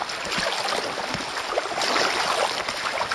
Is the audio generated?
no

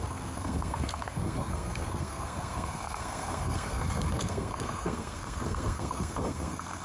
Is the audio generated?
yes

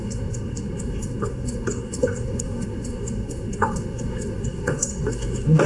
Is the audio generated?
yes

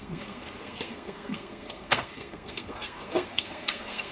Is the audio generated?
yes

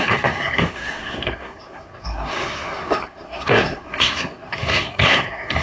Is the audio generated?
yes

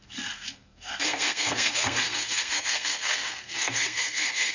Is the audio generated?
yes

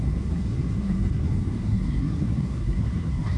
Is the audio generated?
yes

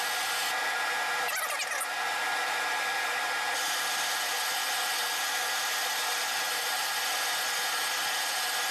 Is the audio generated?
no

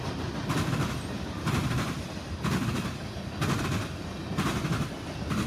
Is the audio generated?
no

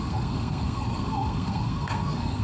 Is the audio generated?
yes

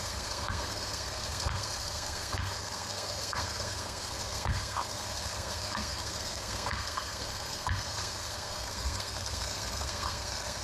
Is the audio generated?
yes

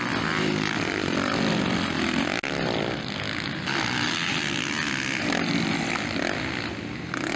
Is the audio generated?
no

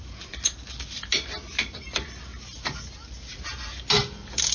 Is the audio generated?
no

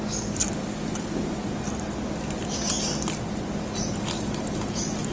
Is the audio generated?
no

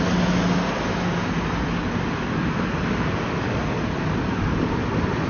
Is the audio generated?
no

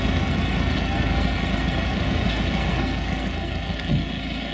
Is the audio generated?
yes